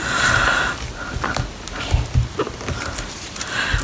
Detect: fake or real real